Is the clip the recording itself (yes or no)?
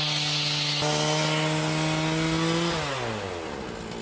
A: yes